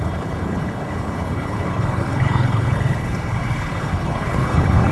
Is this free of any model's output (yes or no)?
no